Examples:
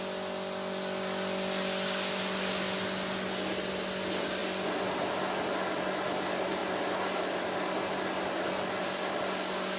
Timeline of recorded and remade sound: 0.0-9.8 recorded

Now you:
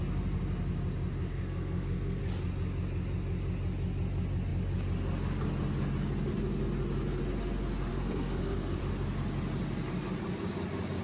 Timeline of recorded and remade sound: 0.0-1.3 recorded; 1.3-2.2 remade; 2.2-7.9 recorded; 7.9-8.8 remade; 8.8-11.0 recorded

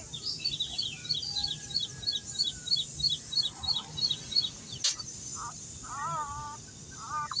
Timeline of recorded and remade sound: 0.0-7.4 recorded

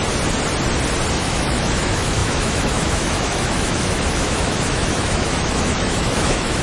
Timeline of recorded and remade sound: 0.0-1.2 recorded; 1.2-6.6 remade

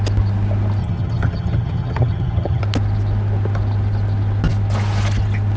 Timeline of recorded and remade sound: 0.0-0.8 recorded; 0.8-2.6 remade; 2.6-5.6 recorded

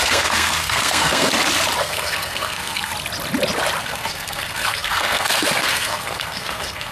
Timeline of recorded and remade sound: 0.0-1.3 remade; 1.3-1.8 recorded; 1.8-2.9 remade; 2.9-3.8 recorded; 3.8-6.9 remade